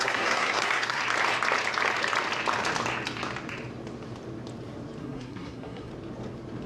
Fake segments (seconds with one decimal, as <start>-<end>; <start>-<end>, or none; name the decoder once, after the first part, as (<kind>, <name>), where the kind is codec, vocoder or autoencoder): 0.0-1.0 (codec, SNAC); 5.0-5.9